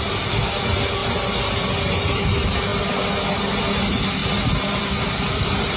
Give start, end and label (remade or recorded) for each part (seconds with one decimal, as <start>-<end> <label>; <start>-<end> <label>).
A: 0.0-5.8 recorded